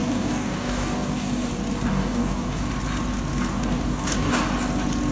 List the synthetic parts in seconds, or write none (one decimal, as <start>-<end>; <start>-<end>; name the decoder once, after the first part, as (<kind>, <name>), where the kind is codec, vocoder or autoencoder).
0.0-1.5 (codec, DAC); 1.9-2.7; 3.5-4.4